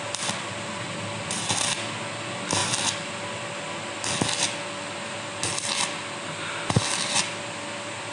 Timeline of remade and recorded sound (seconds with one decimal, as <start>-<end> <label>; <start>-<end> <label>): 0.0-8.1 recorded